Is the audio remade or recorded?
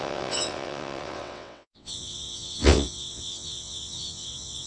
remade